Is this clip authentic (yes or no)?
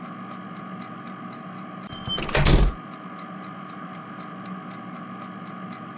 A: yes